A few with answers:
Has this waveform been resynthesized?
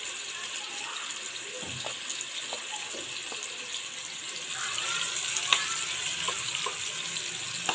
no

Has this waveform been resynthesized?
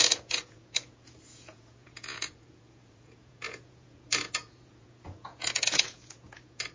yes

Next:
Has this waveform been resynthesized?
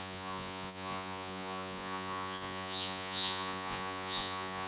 yes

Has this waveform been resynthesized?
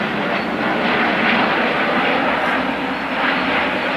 no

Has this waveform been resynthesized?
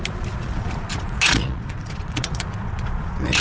yes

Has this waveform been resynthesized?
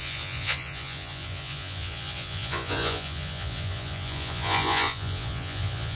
yes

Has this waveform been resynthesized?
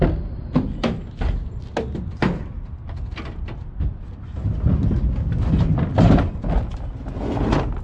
no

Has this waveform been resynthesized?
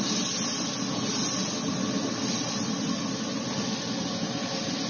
no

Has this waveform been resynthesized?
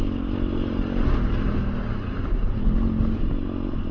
no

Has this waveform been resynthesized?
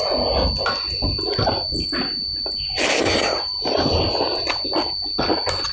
no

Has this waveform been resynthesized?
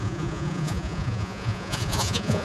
yes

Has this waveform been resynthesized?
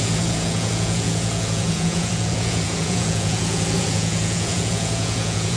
yes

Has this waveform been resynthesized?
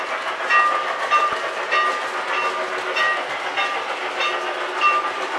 no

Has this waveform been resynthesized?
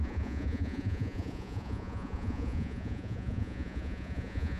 yes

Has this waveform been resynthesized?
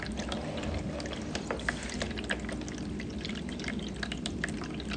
no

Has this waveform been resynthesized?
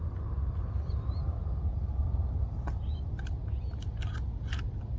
no